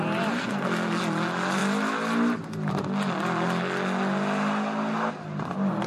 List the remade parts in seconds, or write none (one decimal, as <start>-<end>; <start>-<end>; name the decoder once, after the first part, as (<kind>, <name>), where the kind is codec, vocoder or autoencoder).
0.4-1.0 (codec, SNAC)